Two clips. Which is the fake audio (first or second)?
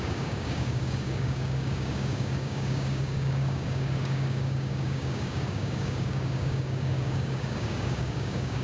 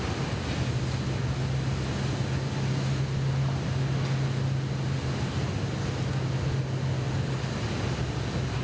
first